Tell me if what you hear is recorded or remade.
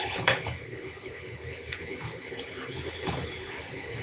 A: remade